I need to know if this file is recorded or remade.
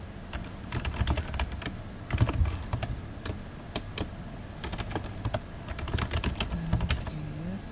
recorded